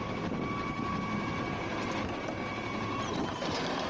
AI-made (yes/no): no